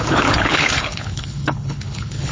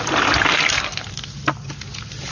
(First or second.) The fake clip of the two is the first